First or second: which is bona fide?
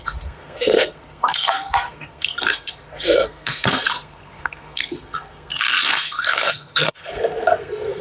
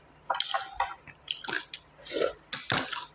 second